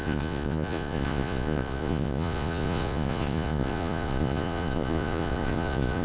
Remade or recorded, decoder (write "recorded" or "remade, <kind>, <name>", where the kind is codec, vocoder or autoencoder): remade, vocoder, Vocos